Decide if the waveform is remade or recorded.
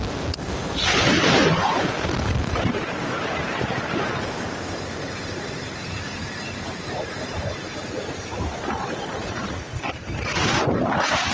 remade